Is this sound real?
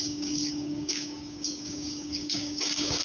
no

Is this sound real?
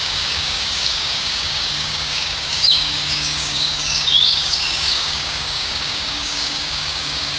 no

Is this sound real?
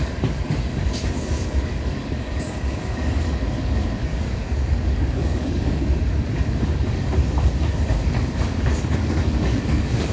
no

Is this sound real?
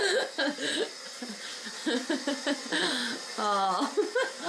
yes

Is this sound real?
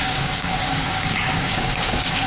no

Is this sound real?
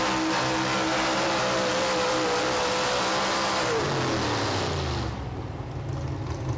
yes